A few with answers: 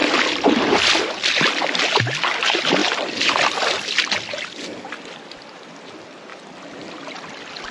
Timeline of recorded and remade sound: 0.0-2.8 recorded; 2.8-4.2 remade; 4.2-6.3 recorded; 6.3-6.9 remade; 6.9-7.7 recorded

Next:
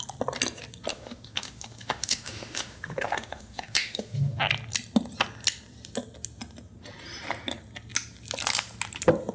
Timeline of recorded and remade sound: 0.0-0.9 recorded; 0.9-4.4 remade; 4.4-9.3 recorded

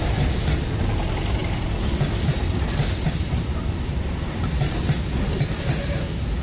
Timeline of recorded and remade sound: 0.0-6.4 recorded

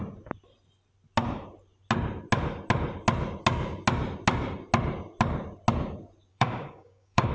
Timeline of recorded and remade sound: 0.0-6.3 recorded; 6.3-7.3 remade

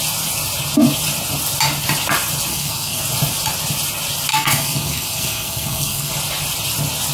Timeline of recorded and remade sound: 0.0-2.5 recorded; 2.5-3.0 remade; 3.0-4.3 recorded; 4.3-6.1 remade; 6.1-7.1 recorded

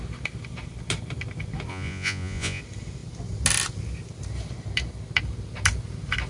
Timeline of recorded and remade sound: 0.0-1.7 recorded; 1.7-2.6 remade; 2.6-6.3 recorded

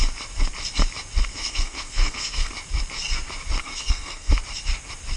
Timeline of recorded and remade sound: 0.0-1.3 recorded; 1.3-2.5 remade; 2.5-3.6 recorded; 3.6-4.3 remade; 4.3-5.2 recorded